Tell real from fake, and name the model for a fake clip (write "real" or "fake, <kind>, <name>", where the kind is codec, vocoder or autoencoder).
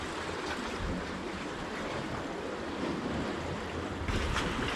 fake, vocoder, BigVGAN v2